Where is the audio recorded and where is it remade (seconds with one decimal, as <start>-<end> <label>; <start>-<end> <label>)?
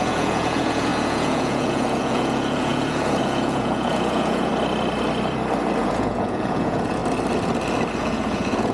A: 0.0-4.5 remade; 4.5-5.8 recorded; 5.8-7.0 remade; 7.0-8.0 recorded; 8.0-8.7 remade